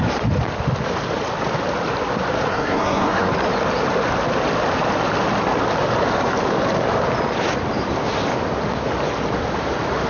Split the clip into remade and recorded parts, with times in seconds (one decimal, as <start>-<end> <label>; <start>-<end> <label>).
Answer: 0.0-2.5 recorded; 2.5-3.3 remade; 3.3-10.1 recorded